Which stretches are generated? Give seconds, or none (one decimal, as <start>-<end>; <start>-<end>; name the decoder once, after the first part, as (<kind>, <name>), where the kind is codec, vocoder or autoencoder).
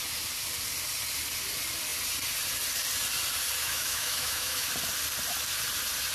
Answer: 3.6-4.7 (autoencoder, DAC-VAE)